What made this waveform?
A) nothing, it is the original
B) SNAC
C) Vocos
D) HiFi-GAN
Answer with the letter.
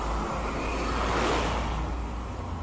A